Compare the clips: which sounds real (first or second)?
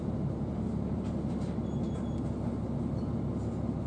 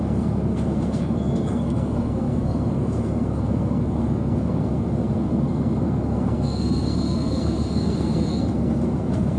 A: first